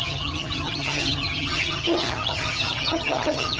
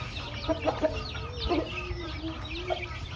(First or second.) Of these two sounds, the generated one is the first